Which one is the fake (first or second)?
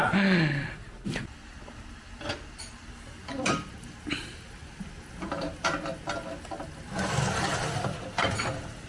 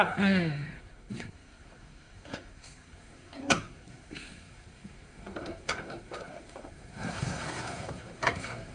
second